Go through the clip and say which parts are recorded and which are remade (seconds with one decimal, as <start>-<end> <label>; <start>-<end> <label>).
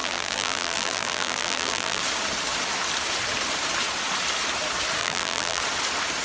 0.0-2.0 remade; 2.0-5.0 recorded; 5.0-5.6 remade; 5.6-6.2 recorded